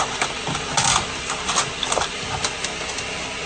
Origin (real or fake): real